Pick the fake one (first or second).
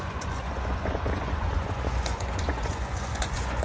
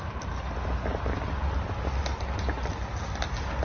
first